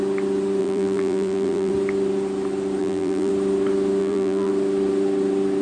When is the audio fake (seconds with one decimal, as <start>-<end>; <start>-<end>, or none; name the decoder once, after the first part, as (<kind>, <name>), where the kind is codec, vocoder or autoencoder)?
0.6-1.7 (vocoder, BigVGAN v2); 2.8-3.3; 4.0-4.5